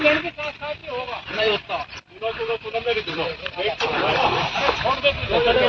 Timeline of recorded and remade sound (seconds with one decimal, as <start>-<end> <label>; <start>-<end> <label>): 0.0-0.8 recorded; 0.8-4.2 remade; 4.2-5.7 recorded